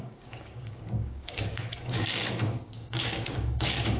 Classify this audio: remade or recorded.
remade